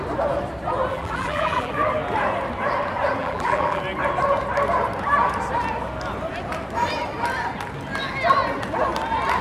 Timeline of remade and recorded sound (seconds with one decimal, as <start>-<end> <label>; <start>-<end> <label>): 0.0-0.9 recorded; 0.9-1.7 remade; 1.7-3.2 recorded; 3.2-3.8 remade; 3.8-9.4 recorded